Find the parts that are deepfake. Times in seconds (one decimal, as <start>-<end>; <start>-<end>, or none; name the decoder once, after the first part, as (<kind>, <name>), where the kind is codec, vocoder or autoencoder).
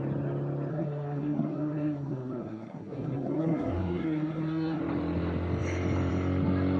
0.7-4.8 (codec, SNAC)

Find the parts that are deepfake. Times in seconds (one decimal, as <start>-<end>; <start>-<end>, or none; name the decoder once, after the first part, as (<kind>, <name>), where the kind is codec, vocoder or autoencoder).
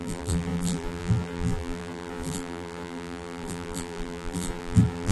0.0-5.1 (vocoder, BigVGAN v2)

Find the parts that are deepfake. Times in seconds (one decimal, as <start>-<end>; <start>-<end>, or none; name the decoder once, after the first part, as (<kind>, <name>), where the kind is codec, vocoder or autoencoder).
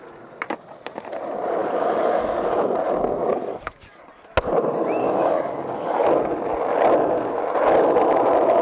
1.6-2.2 (codec, DAC); 3.2-4.0; 5.0-6.1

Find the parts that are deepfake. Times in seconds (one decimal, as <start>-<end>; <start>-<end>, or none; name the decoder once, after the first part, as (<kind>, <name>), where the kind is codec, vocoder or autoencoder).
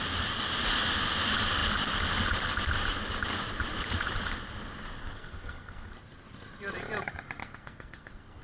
5.0-5.9 (codec, SNAC); 7.4-8.4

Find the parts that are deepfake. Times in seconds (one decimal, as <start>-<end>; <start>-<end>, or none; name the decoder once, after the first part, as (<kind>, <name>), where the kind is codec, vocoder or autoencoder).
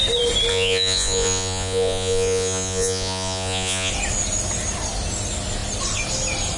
0.5-3.9 (vocoder, Vocos)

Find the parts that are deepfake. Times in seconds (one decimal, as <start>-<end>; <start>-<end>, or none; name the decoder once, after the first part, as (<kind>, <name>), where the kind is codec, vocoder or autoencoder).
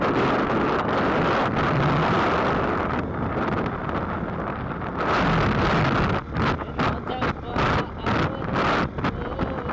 none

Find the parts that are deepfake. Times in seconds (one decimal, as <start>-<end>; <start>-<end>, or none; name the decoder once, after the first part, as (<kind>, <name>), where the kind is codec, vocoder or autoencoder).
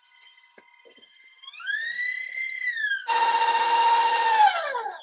none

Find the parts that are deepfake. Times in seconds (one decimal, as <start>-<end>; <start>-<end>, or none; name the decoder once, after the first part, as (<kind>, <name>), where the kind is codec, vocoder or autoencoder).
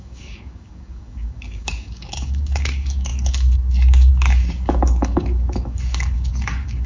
0.0-6.9 (codec, DAC)